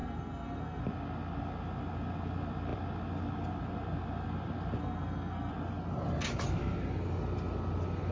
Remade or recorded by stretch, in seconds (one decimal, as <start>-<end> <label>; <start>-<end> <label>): 0.0-0.8 remade; 0.8-4.8 recorded; 4.8-5.5 remade; 5.5-8.1 recorded